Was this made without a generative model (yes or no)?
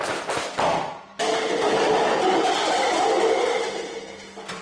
yes